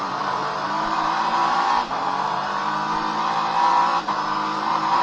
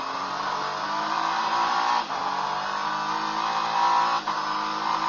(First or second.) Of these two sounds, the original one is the second